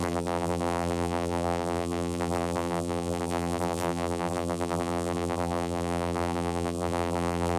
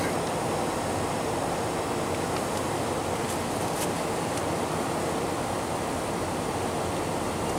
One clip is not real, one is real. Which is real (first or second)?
second